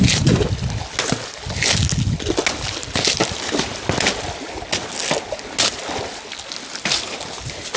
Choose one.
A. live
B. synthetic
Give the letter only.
A